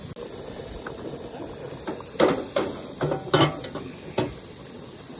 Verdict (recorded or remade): recorded